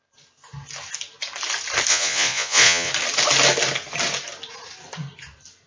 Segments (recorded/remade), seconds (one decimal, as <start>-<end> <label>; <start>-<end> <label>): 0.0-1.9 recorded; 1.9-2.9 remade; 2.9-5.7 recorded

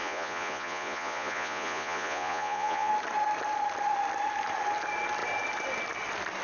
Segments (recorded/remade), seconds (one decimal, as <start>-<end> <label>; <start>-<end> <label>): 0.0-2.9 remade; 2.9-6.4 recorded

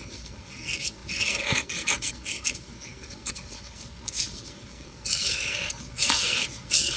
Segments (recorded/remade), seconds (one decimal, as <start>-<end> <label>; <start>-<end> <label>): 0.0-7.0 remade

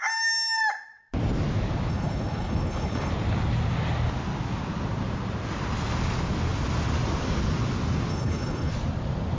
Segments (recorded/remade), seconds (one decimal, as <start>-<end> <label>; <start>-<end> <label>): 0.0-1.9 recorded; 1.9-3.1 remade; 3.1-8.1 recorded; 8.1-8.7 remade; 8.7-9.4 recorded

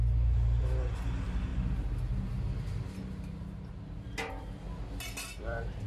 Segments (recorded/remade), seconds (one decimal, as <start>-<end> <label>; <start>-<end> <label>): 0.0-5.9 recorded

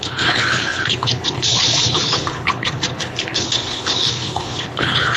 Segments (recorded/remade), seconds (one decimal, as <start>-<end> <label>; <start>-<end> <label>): 0.0-5.2 remade

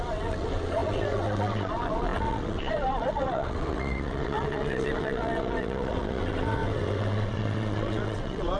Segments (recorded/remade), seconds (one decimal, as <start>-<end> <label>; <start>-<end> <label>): 0.0-8.6 remade

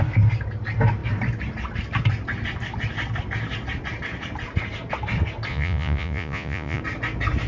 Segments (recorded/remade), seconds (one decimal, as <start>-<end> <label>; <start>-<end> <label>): 0.0-5.5 recorded; 5.5-6.8 remade; 6.8-7.5 recorded